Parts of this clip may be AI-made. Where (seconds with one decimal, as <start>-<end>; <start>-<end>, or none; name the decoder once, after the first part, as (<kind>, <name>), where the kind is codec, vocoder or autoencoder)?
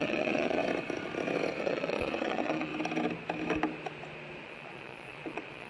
0.0-0.6 (vocoder, Vocos); 1.6-2.7; 4.4-5.7